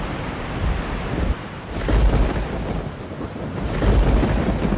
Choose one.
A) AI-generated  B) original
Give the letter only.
B